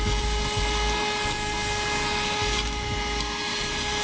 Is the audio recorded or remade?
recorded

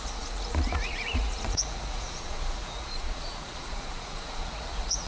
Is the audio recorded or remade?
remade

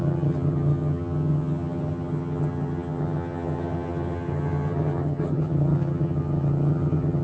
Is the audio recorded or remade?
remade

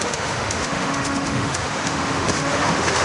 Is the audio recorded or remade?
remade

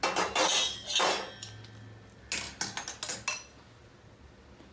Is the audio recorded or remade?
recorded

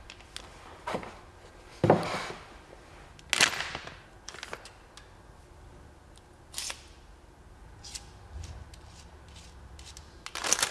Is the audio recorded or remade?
recorded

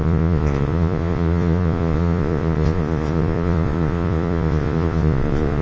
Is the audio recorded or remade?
remade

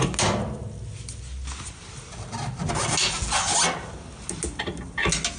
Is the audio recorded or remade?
recorded